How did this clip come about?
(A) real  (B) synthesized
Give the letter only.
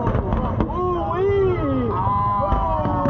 A